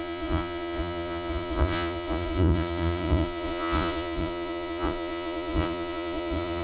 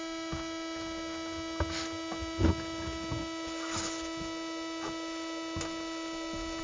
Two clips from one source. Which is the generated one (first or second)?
first